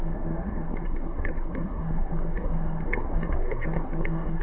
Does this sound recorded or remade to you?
remade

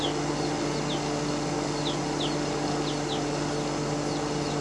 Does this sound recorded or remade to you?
recorded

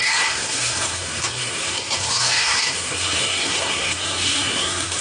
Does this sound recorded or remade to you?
remade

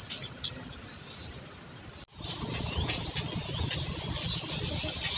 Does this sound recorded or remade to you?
recorded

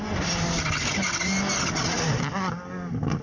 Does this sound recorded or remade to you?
recorded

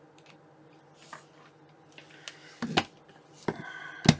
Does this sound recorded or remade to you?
recorded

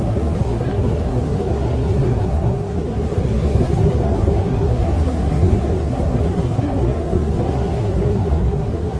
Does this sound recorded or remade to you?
remade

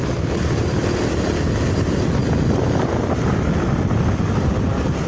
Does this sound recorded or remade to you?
recorded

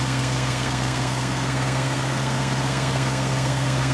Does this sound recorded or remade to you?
remade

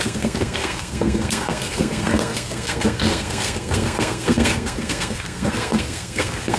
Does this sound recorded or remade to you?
remade